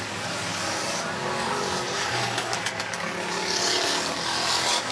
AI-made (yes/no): yes